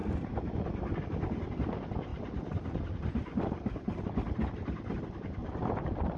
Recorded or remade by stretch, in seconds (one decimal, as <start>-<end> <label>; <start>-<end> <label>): 0.0-5.4 recorded; 5.4-6.2 remade